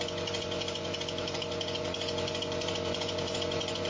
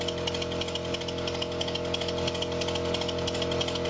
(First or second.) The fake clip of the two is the first